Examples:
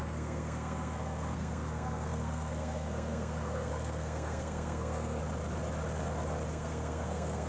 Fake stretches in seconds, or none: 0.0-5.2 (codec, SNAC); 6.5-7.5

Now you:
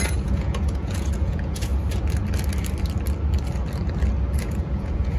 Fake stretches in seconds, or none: 0.0-1.7 (vocoder, Vocos); 4.4-5.2

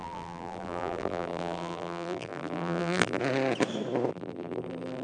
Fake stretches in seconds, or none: 0.0-3.2 (vocoder, BigVGAN v2); 4.1-5.0

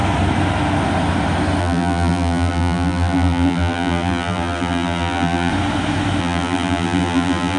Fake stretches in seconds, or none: 1.6-5.5 (vocoder, BigVGAN v2); 6.2-7.6